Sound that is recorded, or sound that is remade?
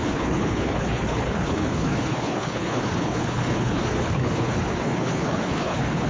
remade